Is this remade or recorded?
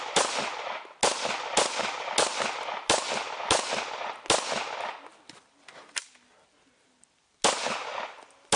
recorded